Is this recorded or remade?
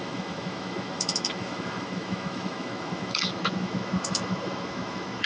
remade